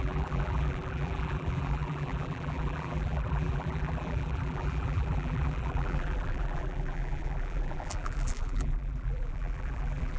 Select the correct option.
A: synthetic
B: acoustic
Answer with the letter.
A